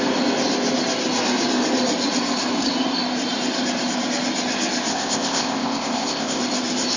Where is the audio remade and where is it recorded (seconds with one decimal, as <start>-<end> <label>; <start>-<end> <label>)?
0.0-4.9 recorded; 4.9-6.4 remade; 6.4-7.0 recorded